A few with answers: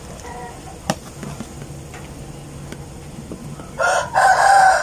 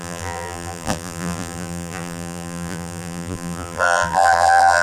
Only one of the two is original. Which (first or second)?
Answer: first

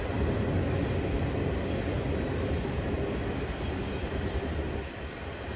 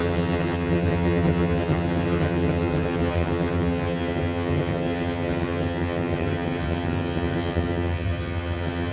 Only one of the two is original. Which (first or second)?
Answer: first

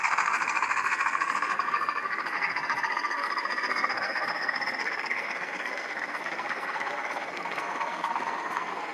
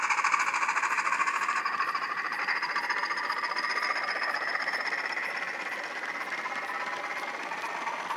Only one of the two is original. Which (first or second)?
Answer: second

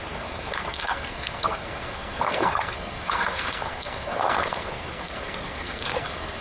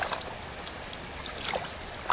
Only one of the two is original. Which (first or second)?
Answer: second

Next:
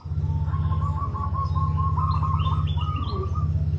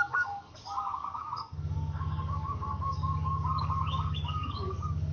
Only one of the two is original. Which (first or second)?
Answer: first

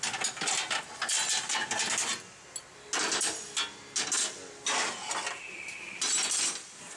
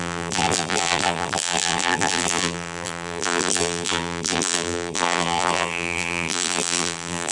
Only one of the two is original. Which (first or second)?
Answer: first